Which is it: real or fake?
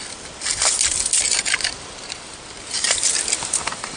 real